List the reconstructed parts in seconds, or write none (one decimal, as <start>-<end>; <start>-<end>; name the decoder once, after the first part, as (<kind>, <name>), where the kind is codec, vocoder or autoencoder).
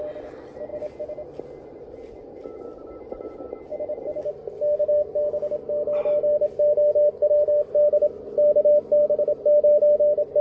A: none